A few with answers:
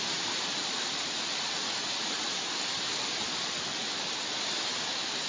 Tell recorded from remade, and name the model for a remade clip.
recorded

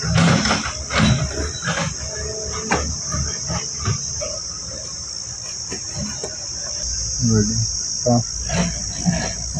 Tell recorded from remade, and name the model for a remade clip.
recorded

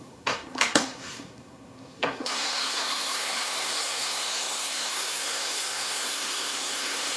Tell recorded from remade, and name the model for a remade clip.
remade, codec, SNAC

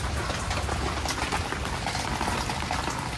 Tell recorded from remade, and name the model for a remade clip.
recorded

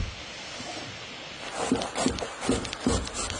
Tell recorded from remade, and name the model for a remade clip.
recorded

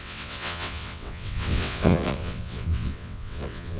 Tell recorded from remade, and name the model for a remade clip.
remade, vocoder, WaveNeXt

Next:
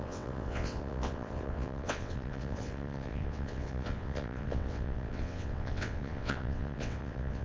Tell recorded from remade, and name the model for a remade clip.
remade, vocoder, WaveNeXt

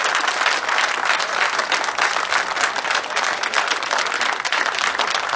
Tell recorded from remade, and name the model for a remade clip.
recorded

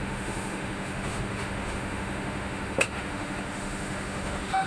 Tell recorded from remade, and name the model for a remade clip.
remade, autoencoder, DAC-VAE